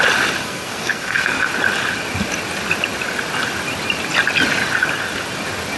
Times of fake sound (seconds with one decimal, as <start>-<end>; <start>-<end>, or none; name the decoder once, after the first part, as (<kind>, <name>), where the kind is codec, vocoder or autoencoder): 0.4-1.5 (codec, SNAC)